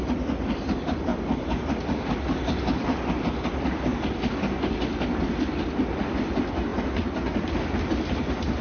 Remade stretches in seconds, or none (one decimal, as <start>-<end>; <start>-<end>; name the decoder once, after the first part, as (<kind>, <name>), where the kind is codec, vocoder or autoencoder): none